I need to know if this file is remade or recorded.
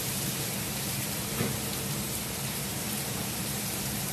remade